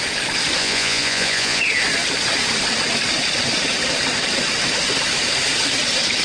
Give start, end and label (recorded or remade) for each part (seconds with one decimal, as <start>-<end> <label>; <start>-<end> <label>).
0.0-0.6 recorded; 0.6-1.6 remade; 1.6-6.2 recorded

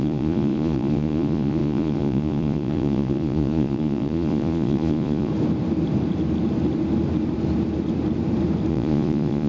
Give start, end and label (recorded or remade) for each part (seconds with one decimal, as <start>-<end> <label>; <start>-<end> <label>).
0.0-5.3 remade; 5.3-8.7 recorded; 8.7-9.5 remade

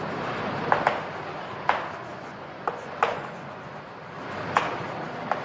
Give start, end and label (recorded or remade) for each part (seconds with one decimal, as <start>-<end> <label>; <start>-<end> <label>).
0.0-2.0 recorded; 2.0-3.7 remade; 3.7-5.4 recorded

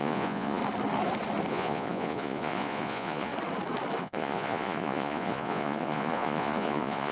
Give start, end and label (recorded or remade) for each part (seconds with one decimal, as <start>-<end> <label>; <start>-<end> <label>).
0.0-0.6 remade; 0.6-1.5 recorded; 1.5-3.3 remade; 3.3-4.0 recorded; 4.0-7.1 remade

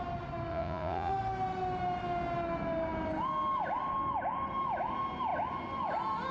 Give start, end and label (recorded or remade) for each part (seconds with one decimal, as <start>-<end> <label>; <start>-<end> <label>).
0.0-0.5 recorded; 0.5-1.1 remade; 1.1-6.3 recorded